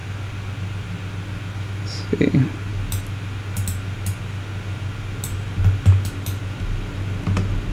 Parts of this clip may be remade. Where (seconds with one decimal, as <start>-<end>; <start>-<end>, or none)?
none